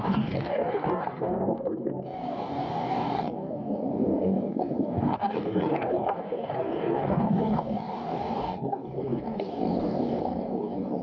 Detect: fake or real fake